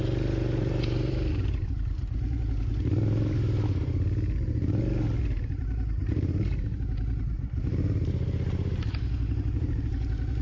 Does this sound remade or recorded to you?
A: remade